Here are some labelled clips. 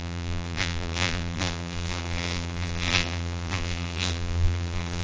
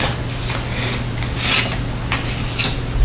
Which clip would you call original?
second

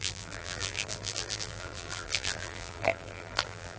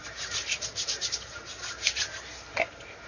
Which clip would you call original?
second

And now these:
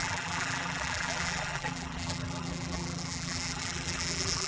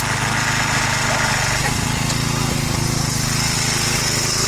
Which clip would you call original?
second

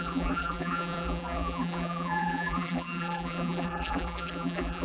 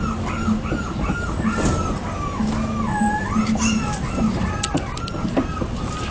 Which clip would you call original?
second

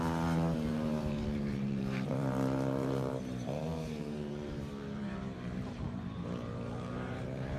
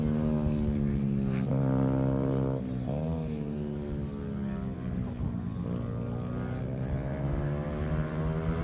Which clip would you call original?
second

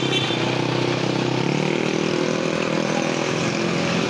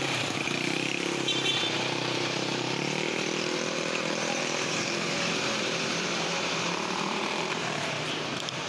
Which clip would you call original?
first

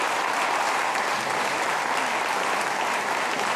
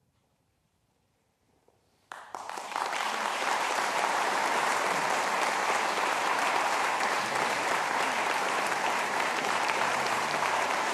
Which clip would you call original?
first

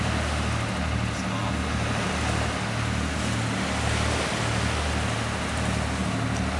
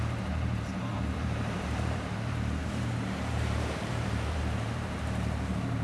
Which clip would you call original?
first